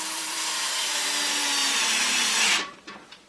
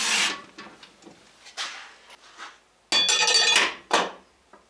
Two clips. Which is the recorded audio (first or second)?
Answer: second